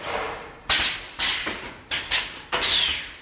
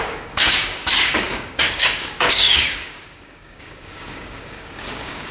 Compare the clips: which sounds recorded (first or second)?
first